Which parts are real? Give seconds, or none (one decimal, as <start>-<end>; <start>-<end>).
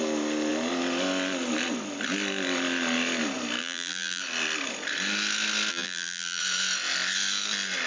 0.0-3.6; 4.2-5.7; 6.4-7.9